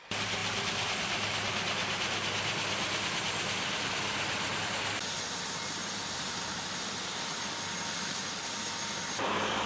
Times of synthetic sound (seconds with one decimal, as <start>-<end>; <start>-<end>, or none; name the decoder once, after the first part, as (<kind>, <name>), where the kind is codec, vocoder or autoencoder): 5.8-9.7 (vocoder, BigVGAN v2)